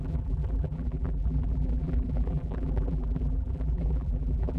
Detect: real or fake fake